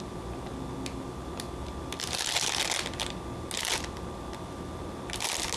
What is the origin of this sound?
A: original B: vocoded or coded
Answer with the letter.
A